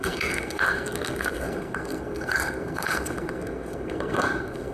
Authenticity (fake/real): fake